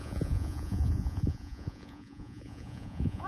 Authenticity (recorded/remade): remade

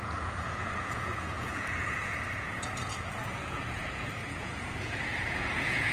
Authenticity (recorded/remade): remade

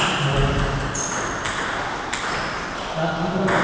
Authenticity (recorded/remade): recorded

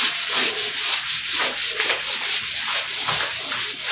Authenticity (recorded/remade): recorded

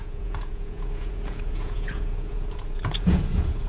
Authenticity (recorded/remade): remade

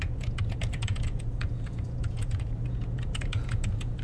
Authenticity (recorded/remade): remade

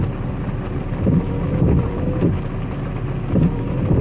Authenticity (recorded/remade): recorded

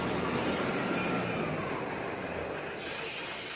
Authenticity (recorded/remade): recorded